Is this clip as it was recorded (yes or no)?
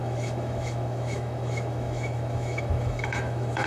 no